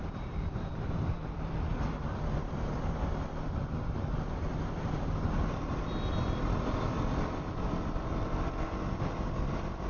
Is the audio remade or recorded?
remade